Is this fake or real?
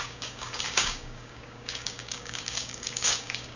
fake